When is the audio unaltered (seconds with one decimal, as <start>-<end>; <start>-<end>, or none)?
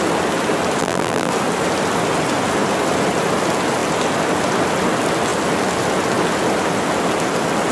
0.0-0.8; 1.3-7.7